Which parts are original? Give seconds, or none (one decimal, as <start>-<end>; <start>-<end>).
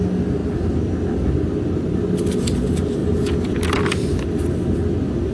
0.0-5.3